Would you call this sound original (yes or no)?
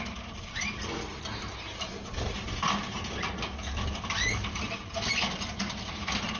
yes